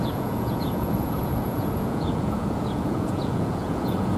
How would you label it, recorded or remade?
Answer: remade